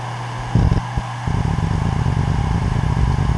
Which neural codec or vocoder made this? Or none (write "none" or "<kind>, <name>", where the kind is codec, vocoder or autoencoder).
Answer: none